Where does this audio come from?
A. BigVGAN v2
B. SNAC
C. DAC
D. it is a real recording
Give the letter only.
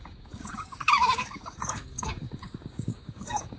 C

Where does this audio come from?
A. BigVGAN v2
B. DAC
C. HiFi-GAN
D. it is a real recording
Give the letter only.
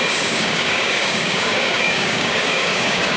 B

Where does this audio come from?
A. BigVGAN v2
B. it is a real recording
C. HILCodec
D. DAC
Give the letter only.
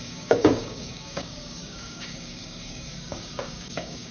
D